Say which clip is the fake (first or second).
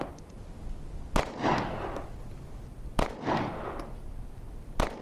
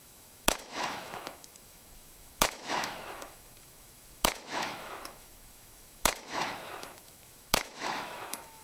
second